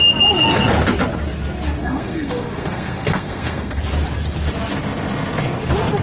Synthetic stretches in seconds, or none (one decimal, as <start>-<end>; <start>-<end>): 1.8-3.8